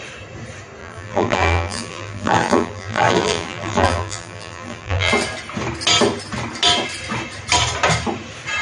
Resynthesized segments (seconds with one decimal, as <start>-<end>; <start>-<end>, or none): 0.8-5.1